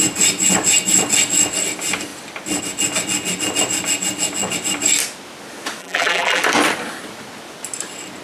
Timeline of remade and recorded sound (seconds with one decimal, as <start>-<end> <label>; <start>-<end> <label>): 0.0-5.8 recorded; 5.8-6.4 remade; 6.4-8.2 recorded